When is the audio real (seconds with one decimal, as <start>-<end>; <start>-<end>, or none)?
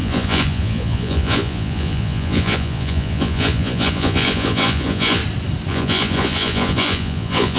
5.2-5.7